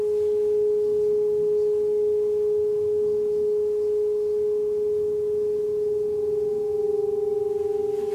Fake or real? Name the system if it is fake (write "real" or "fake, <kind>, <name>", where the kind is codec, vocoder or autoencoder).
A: real